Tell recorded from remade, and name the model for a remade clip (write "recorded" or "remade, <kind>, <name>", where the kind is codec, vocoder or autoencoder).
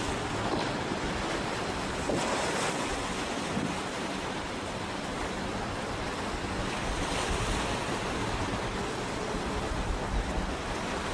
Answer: remade, vocoder, BigVGAN v2